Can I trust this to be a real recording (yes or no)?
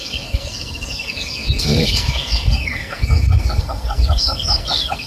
no